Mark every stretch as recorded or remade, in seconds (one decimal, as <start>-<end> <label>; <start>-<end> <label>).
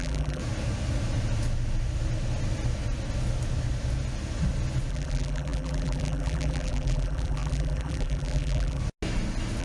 0.0-0.4 remade; 0.4-4.9 recorded; 4.9-8.8 remade; 8.8-9.6 recorded